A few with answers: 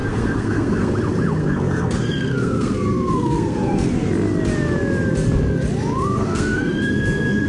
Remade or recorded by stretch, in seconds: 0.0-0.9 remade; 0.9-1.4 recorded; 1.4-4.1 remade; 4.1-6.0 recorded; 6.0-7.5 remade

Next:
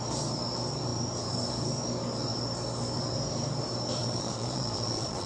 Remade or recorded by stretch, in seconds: 0.0-4.0 recorded; 4.0-5.3 remade

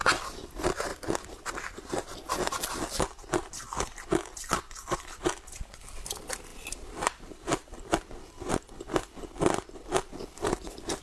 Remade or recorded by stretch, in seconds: 0.0-11.0 recorded

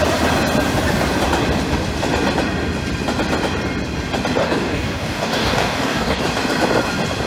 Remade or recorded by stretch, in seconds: 0.0-4.4 recorded; 4.4-6.2 remade; 6.2-7.3 recorded

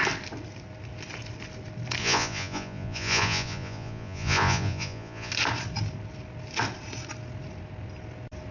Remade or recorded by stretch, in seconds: 0.0-2.0 recorded; 2.0-5.3 remade; 5.3-8.5 recorded

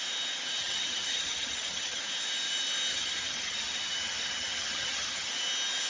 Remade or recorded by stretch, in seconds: 0.0-0.6 recorded; 0.6-2.0 remade; 2.0-2.9 recorded; 2.9-5.3 remade; 5.3-5.9 recorded

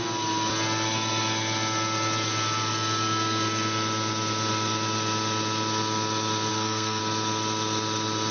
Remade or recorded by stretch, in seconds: 0.0-6.5 recorded; 6.5-7.0 remade; 7.0-8.3 recorded